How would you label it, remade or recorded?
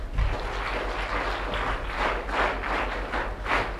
recorded